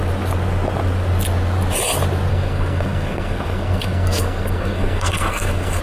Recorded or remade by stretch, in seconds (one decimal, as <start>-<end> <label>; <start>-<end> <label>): 0.0-2.3 recorded; 2.3-5.8 remade